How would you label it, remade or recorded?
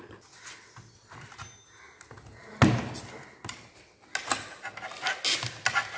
recorded